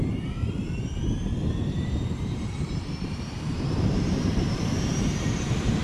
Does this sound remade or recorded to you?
remade